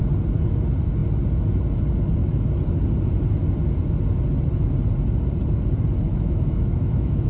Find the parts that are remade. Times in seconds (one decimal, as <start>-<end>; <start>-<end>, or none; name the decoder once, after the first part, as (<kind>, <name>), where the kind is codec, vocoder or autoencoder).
6.1-7.3 (autoencoder, DAC-VAE)